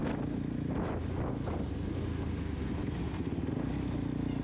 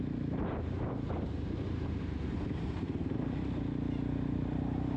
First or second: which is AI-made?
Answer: second